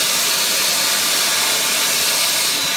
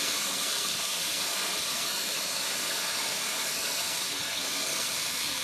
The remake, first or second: second